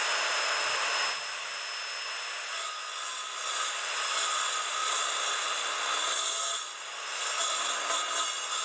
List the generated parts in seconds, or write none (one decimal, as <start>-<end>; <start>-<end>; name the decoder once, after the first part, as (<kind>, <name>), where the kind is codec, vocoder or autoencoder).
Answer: none